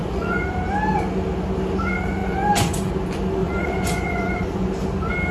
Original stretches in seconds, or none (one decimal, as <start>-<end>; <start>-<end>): 0.5-2.2; 2.9-3.4; 4.7-5.3